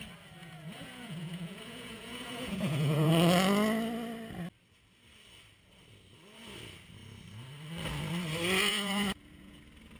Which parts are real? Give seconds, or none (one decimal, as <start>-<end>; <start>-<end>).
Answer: 0.0-0.4; 3.1-8.7; 9.6-10.0